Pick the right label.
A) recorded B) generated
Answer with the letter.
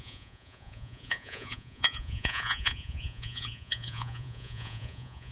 B